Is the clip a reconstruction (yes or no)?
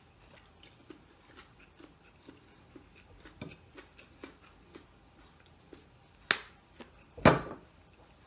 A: no